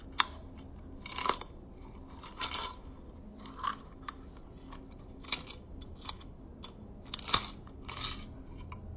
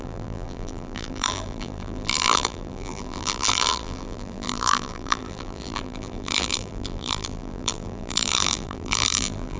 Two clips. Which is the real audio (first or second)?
first